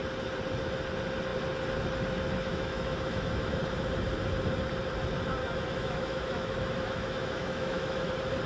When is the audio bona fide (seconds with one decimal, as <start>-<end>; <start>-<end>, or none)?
0.0-2.5; 3.6-5.4; 8.1-8.5